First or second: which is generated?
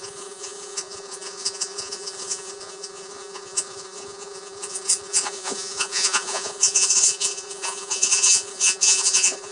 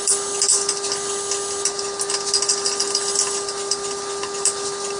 first